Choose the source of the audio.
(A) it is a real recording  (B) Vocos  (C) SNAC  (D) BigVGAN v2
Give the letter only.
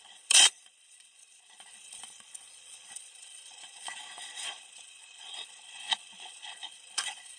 B